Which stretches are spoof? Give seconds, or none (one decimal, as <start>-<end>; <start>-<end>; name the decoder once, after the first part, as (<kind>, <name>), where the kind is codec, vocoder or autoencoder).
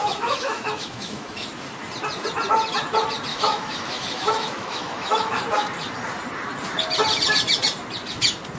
0.0-1.5 (autoencoder, DAC-VAE); 3.3-5.4